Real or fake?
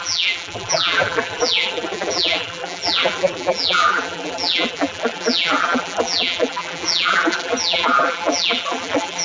fake